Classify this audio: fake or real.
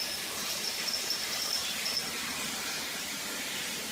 real